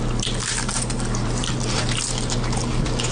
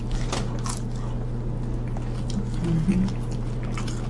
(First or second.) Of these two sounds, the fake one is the first